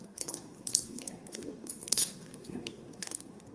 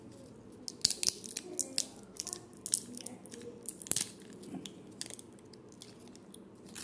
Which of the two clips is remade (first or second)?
first